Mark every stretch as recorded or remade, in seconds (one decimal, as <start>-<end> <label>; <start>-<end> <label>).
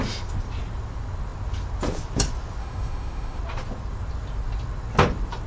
0.0-2.6 recorded; 2.6-3.4 remade; 3.4-5.5 recorded